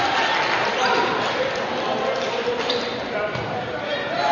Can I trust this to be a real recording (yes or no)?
yes